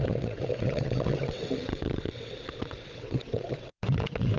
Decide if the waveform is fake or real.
fake